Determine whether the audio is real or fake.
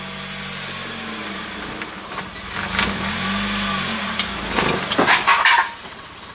real